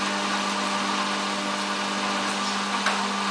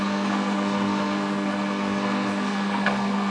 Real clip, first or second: first